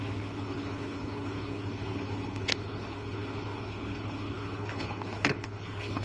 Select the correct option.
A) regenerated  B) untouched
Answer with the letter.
A